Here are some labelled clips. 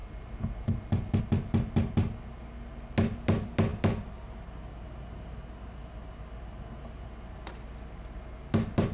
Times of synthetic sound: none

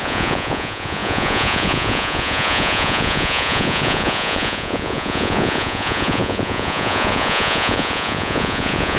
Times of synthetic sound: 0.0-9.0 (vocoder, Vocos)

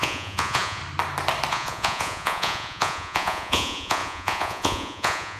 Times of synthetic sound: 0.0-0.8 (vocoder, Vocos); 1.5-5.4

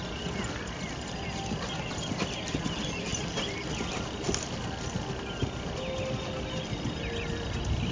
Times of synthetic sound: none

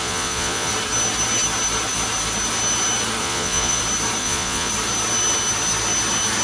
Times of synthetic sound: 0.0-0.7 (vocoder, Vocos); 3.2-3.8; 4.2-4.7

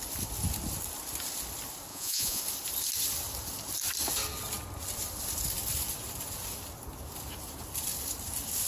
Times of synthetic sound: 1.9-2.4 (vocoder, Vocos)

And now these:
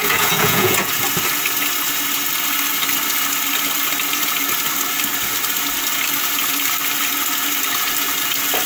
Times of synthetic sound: 0.0-0.9 (vocoder, Vocos)

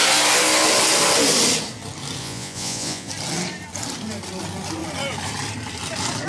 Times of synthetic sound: 2.2-3.1 (vocoder, Vocos)